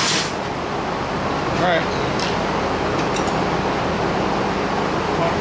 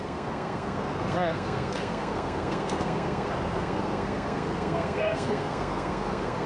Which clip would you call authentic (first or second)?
first